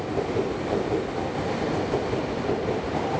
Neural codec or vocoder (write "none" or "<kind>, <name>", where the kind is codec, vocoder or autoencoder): none